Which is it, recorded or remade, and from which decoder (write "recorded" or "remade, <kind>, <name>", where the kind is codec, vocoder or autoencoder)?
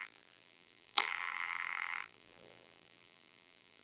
remade, vocoder, BigVGAN v2